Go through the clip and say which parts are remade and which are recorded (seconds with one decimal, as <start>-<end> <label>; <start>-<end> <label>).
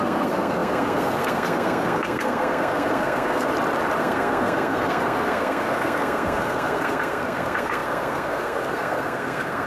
0.0-3.5 remade; 3.5-4.0 recorded; 4.0-9.7 remade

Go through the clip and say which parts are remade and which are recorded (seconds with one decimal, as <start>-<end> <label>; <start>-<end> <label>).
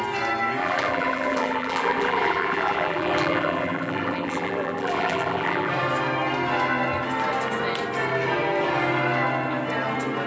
0.0-0.6 recorded; 0.6-5.7 remade; 5.7-10.3 recorded